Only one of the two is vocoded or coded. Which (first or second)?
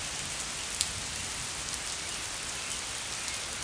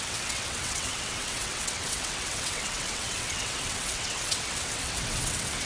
second